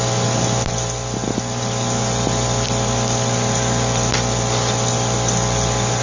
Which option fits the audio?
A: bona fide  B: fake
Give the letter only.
A